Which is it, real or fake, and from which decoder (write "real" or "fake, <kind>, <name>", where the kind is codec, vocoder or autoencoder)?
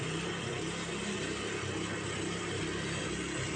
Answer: real